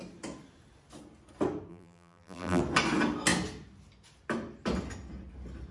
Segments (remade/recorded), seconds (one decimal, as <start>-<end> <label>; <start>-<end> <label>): 0.0-1.7 recorded; 1.7-2.6 remade; 2.6-5.7 recorded